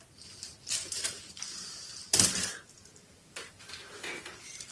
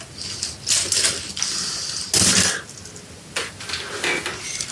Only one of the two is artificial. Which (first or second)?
first